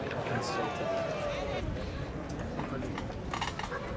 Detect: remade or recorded recorded